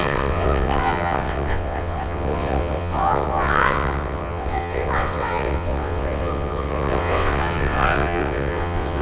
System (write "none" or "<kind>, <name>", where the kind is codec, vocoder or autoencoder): vocoder, WaveNeXt